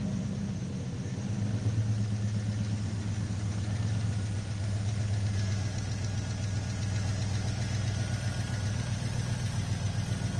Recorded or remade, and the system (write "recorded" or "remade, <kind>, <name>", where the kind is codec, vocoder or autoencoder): recorded